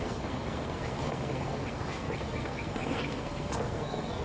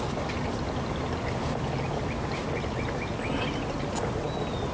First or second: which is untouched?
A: second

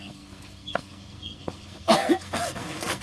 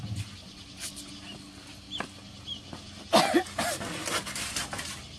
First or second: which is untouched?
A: second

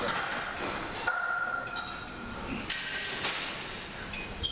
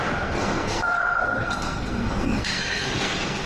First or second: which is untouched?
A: first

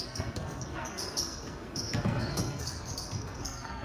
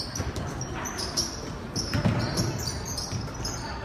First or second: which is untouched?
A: second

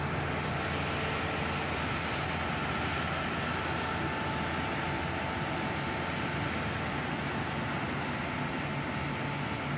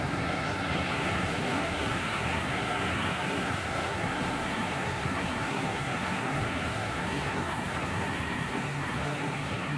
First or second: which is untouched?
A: first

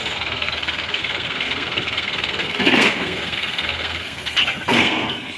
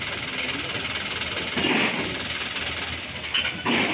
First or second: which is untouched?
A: second